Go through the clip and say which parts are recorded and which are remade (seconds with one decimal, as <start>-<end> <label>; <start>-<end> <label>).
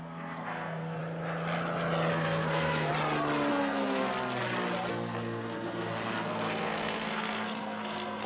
0.0-1.0 remade; 1.0-2.1 recorded; 2.1-2.9 remade; 2.9-3.5 recorded; 3.5-4.1 remade; 4.1-4.9 recorded; 4.9-8.3 remade